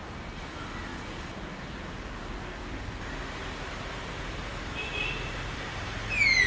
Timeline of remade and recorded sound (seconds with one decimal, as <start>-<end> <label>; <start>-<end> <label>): 0.0-6.5 recorded